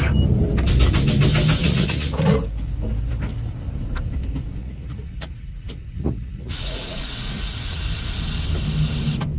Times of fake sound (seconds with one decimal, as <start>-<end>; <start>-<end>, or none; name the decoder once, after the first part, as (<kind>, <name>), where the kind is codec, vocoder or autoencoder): 1.6-2.4 (vocoder, Vocos); 4.6-7.8